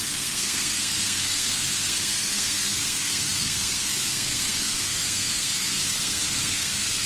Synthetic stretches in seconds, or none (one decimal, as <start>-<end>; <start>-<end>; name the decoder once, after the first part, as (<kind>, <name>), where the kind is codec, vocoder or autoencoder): 0.0-7.1 (codec, SNAC)